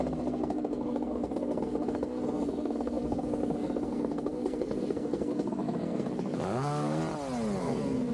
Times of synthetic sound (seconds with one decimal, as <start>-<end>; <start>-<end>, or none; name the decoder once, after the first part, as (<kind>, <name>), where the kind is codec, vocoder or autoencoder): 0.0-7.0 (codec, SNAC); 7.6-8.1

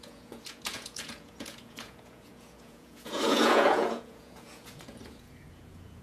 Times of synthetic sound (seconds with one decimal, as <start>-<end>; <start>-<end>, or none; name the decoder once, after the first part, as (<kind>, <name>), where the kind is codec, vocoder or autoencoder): 0.0-6.0 (vocoder, Vocos)

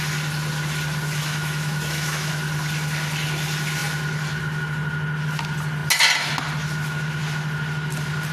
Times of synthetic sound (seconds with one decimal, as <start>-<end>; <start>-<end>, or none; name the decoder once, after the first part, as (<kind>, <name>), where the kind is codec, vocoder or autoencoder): 1.2-2.3 (autoencoder, DAC-VAE)